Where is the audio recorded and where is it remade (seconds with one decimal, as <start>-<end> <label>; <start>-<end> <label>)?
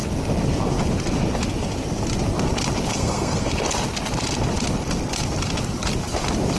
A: 0.0-2.9 recorded; 2.9-3.5 remade; 3.5-6.6 recorded